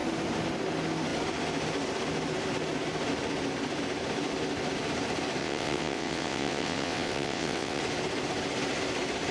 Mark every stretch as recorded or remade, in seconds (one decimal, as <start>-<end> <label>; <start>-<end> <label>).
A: 0.0-5.4 recorded; 5.4-7.8 remade; 7.8-9.3 recorded